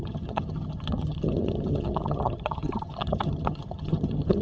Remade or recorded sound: remade